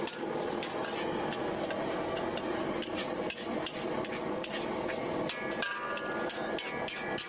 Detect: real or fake real